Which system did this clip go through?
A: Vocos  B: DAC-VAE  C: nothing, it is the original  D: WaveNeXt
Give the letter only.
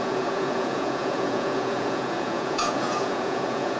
A